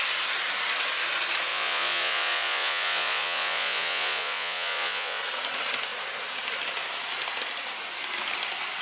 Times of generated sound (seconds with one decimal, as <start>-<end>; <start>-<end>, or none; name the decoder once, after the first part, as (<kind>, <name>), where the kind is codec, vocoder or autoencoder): 1.5-5.2 (vocoder, Vocos)